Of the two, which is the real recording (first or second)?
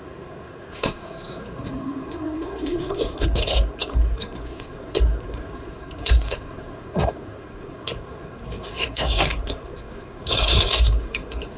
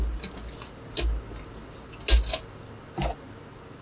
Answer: second